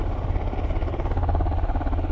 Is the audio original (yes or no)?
no